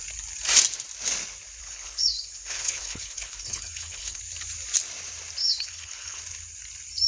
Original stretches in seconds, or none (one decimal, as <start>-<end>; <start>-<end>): 0.0-1.6; 4.2-5.4; 6.2-7.1